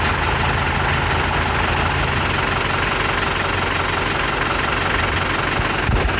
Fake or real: real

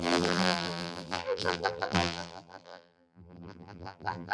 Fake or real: fake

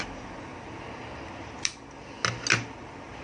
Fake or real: real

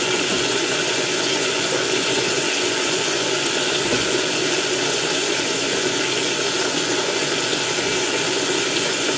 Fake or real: fake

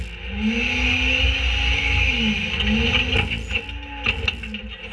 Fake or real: real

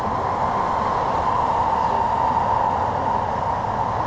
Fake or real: real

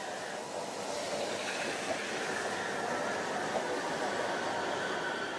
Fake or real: real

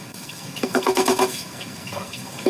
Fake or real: fake